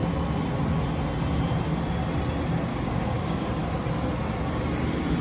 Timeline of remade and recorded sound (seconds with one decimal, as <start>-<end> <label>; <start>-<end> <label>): 0.0-2.7 recorded; 2.7-3.5 remade; 3.5-5.2 recorded